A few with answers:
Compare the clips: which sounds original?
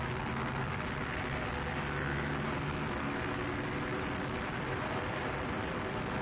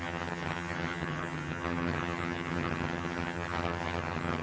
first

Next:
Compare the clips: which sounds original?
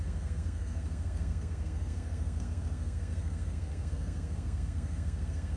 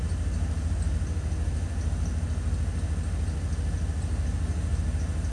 second